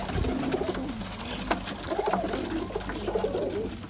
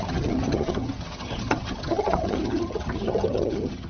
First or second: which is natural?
first